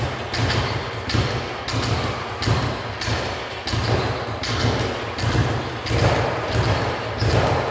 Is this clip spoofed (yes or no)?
no